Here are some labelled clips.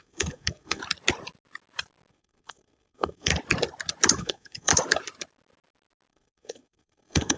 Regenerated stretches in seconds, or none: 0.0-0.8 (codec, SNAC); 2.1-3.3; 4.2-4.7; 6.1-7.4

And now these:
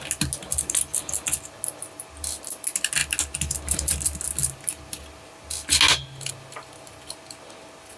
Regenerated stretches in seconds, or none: none

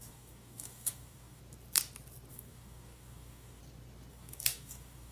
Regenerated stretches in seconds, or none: 0.0-1.4 (codec, DAC); 2.3-3.6; 4.1-5.1

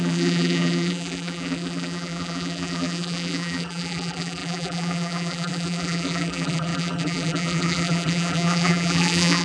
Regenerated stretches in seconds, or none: 0.0-9.4 (vocoder, BigVGAN v2)

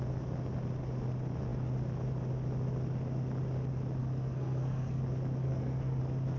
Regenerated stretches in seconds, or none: 4.0-5.0 (codec, SNAC); 5.4-6.0